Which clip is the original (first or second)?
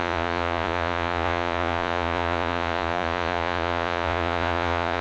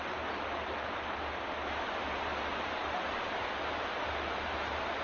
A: second